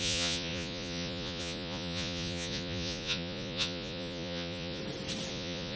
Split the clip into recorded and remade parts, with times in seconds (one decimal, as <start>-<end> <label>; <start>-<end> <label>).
0.0-4.8 remade; 4.8-5.3 recorded; 5.3-5.8 remade